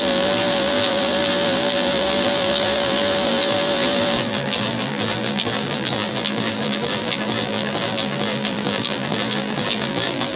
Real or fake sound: fake